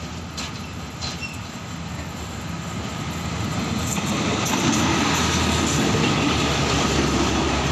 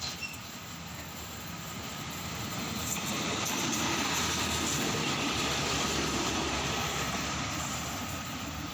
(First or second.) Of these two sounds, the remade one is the second